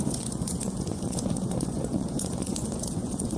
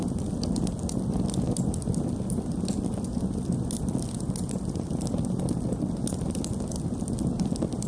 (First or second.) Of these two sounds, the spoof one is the first